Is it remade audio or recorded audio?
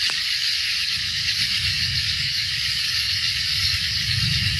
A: remade